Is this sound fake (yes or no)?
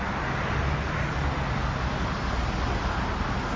no